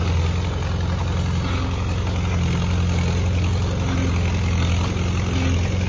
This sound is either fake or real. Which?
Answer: real